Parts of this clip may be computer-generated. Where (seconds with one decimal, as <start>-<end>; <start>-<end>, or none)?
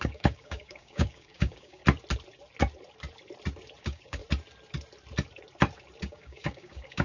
0.0-1.8; 3.8-4.2; 6.0-7.0